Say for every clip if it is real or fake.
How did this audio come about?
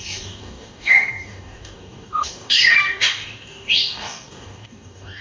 fake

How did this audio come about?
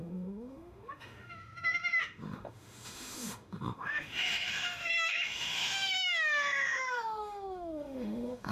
fake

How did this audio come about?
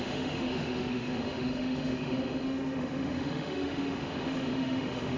fake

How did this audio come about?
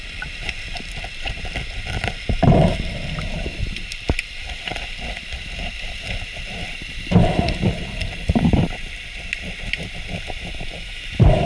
fake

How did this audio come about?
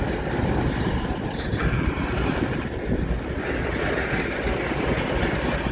real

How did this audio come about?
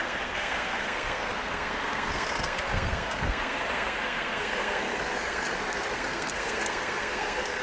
fake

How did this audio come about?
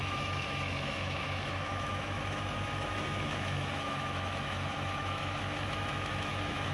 fake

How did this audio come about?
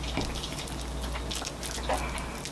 real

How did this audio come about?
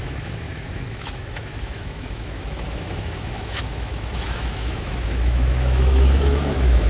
fake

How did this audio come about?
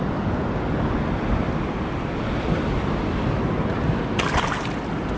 real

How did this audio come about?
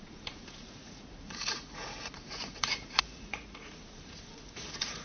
fake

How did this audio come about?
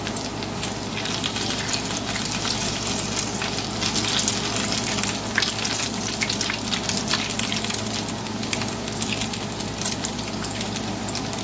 real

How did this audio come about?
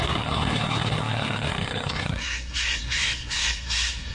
fake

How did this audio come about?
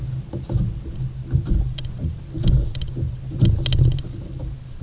real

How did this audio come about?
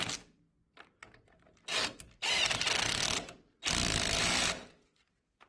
real